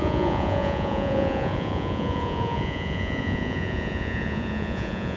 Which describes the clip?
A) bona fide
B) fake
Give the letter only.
B